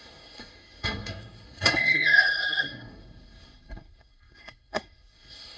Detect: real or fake fake